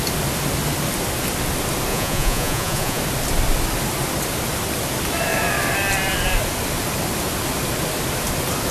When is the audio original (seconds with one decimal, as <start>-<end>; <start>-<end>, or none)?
0.0-1.9; 3.0-8.7